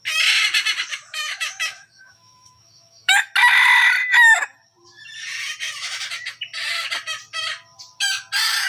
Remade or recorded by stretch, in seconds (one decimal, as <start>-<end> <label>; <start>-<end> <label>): 0.0-0.9 recorded; 0.9-3.2 remade; 3.2-8.7 recorded